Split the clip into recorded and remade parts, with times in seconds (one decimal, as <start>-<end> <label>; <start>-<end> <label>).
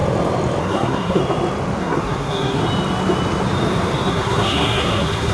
0.0-0.6 recorded; 0.6-1.2 remade; 1.2-1.8 recorded; 1.8-2.6 remade; 2.6-4.1 recorded; 4.1-5.3 remade